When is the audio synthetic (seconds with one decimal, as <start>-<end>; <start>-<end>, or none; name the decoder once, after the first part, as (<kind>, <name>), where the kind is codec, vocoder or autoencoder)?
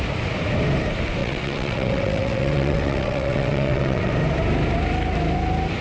1.2-4.1 (vocoder, WaveNeXt)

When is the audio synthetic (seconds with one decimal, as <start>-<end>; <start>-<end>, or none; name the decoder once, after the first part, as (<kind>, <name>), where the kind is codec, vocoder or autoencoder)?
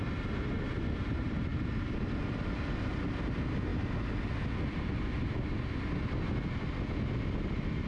none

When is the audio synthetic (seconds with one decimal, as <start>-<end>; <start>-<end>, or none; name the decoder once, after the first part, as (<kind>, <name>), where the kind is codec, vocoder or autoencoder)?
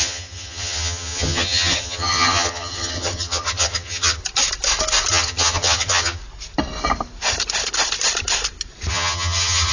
0.0-4.2 (vocoder, HiFi-GAN); 5.1-6.2; 8.9-9.7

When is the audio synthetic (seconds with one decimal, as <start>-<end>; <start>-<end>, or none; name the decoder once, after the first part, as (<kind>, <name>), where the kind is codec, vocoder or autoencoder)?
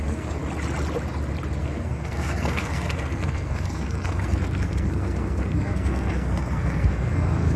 0.0-0.4 (codec, SNAC); 1.6-7.6